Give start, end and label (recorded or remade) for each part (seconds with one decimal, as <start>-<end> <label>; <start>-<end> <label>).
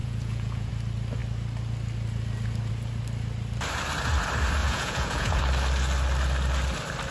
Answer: 0.0-0.7 remade; 0.7-4.6 recorded; 4.6-5.4 remade; 5.4-7.1 recorded